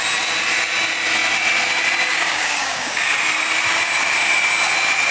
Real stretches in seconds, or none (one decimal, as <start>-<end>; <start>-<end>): 0.0-2.1; 3.2-5.1